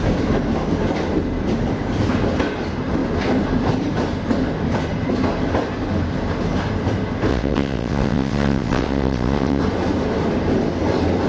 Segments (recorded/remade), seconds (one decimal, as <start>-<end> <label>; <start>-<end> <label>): 0.0-7.3 recorded; 7.3-9.6 remade; 9.6-11.3 recorded